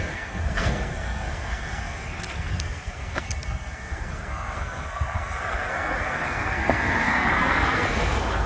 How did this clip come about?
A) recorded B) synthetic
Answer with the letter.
B